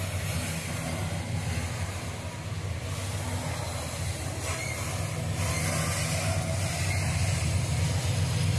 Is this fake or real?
real